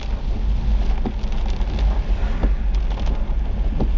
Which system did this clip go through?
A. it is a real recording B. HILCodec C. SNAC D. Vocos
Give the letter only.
A